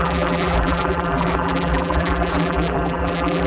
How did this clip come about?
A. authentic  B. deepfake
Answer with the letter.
B